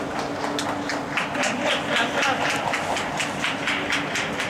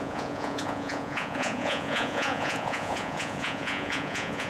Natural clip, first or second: first